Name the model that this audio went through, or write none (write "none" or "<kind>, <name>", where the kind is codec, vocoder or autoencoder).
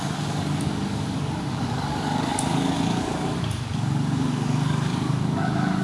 codec, DAC